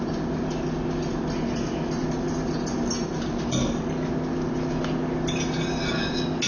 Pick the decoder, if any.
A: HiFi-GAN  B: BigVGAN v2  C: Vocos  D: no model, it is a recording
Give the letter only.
D